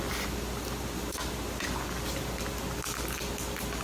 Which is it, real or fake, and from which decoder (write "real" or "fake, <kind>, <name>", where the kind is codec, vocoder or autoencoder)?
real